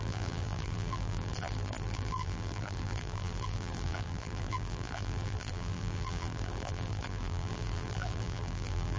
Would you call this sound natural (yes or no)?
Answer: no